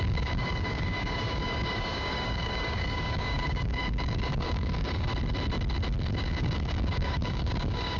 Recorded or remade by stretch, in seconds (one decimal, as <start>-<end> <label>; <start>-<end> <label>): 0.0-5.1 remade; 5.1-6.0 recorded; 6.0-8.0 remade